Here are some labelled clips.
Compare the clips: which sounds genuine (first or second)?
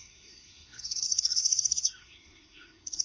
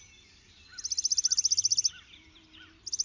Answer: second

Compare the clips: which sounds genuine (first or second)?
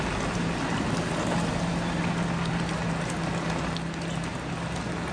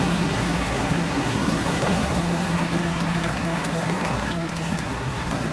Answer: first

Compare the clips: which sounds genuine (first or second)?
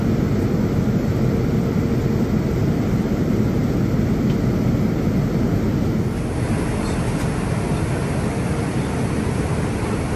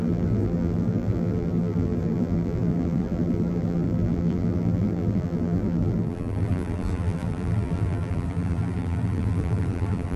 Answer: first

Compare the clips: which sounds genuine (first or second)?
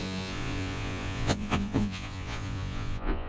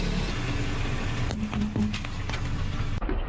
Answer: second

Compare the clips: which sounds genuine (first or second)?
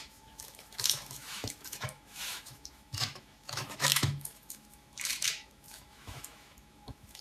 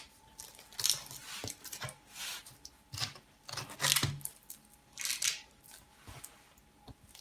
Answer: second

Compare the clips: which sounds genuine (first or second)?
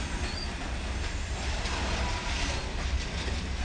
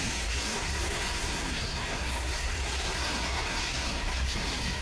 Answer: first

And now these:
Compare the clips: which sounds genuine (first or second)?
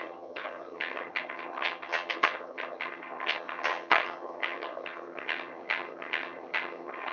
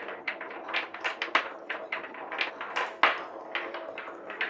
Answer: second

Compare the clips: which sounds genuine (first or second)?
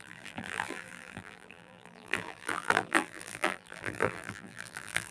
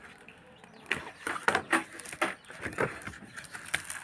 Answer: second